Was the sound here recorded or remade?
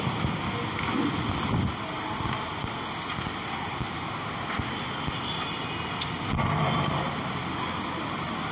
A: recorded